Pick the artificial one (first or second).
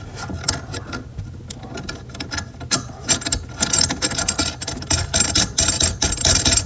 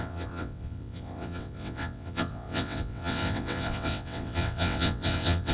second